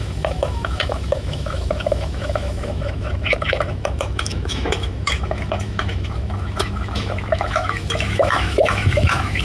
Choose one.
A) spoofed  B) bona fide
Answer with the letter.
A